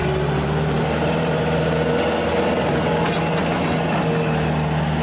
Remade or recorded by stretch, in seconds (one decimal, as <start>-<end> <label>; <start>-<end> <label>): 0.0-1.9 remade; 1.9-5.0 recorded